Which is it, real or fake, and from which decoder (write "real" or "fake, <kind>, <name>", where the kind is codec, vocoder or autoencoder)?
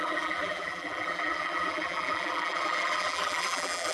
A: fake, vocoder, BigVGAN v2